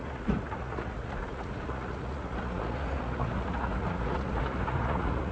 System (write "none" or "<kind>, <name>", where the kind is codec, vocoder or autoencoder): vocoder, Vocos